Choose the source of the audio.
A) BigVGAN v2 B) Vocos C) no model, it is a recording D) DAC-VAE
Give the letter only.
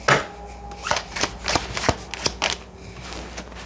C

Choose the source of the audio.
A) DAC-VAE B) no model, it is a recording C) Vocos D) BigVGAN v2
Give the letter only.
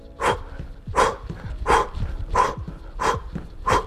B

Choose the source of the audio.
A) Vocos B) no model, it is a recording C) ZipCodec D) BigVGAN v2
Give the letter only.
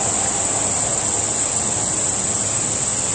B